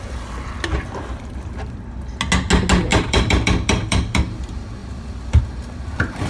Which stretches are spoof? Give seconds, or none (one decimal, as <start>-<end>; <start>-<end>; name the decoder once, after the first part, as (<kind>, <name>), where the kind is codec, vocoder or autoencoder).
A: 2.9-4.2 (vocoder, BigVGAN v2); 4.8-5.4